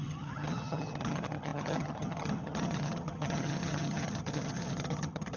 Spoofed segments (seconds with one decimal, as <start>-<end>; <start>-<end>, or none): 0.0-5.4